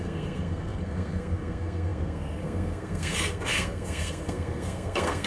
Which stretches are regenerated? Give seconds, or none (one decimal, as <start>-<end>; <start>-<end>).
0.0-5.3